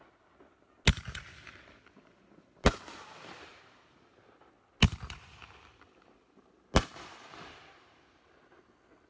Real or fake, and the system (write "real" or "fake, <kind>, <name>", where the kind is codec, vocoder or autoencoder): real